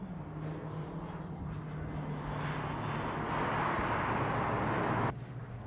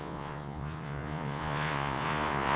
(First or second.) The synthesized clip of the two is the second